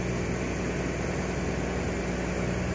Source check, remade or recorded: recorded